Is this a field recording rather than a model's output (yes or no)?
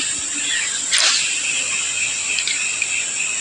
yes